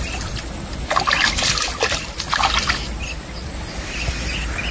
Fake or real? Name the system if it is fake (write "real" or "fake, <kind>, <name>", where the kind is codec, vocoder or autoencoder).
real